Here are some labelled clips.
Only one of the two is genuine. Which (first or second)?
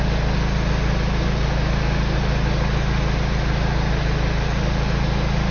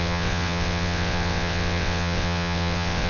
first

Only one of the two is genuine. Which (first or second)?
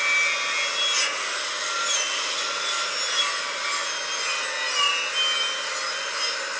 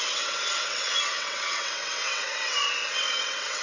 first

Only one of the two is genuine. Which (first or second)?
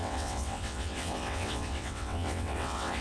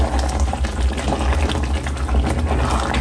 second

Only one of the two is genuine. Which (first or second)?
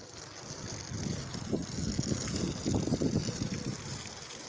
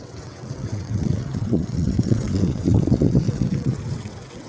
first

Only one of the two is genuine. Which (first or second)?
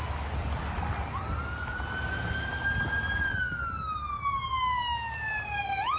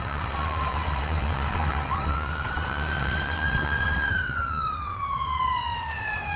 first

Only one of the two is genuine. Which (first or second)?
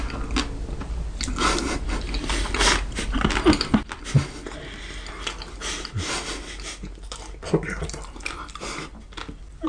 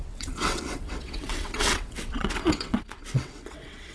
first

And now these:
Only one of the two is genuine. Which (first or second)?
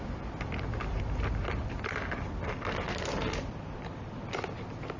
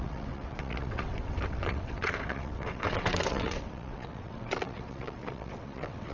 first